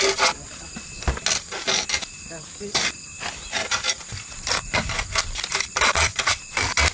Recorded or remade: recorded